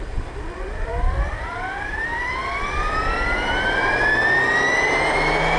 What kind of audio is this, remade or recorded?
remade